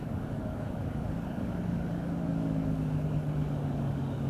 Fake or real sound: fake